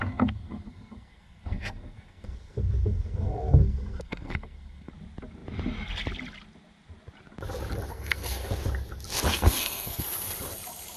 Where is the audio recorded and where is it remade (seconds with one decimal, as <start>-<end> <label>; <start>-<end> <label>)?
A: 0.0-4.9 remade; 4.9-7.9 recorded; 7.9-8.5 remade; 8.5-9.3 recorded; 9.3-10.0 remade; 10.0-11.0 recorded